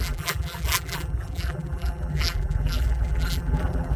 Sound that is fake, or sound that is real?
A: fake